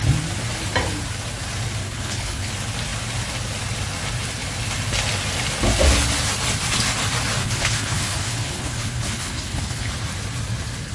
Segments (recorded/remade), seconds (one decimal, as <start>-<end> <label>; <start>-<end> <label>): 0.0-1.8 recorded; 1.8-2.5 remade; 2.5-7.4 recorded; 7.4-9.9 remade; 9.9-10.9 recorded